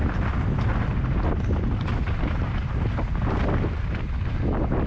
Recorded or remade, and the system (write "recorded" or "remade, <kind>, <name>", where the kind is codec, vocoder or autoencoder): recorded